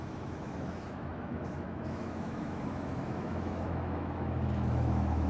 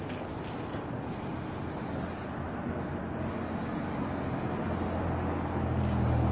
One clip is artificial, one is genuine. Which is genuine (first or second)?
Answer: second